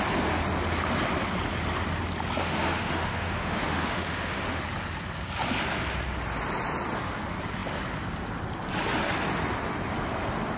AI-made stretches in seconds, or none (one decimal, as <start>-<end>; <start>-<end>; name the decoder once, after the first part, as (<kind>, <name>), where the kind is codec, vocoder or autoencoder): 2.4-4.6 (autoencoder, DAC-VAE)